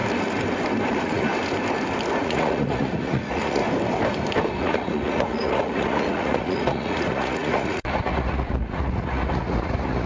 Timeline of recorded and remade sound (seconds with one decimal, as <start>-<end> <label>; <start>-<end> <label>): 0.0-0.9 recorded; 0.9-1.3 remade; 1.3-2.2 recorded; 2.2-3.6 remade; 3.6-4.6 recorded; 4.6-10.1 remade